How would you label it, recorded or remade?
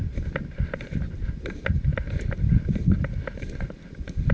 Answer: remade